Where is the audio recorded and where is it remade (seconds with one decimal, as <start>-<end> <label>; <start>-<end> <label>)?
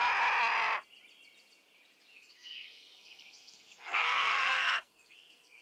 0.0-2.1 recorded; 2.1-5.6 remade